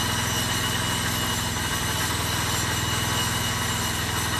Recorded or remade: recorded